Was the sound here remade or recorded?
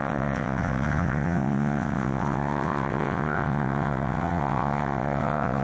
remade